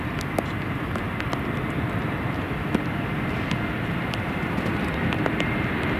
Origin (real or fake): real